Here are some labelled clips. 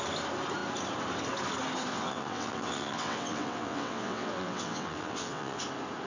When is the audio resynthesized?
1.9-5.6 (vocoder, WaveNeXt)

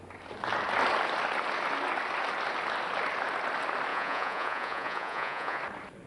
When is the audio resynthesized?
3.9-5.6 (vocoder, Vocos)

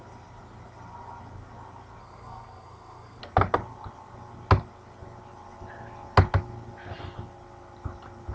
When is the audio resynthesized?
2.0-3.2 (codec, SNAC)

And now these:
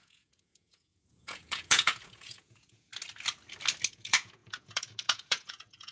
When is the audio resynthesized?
0.0-2.9 (vocoder, Vocos); 3.9-5.9

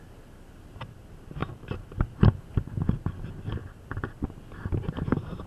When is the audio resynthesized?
1.4-2.7 (vocoder, BigVGAN v2)